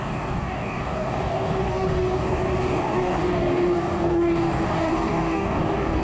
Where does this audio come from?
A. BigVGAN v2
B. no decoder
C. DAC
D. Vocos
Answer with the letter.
C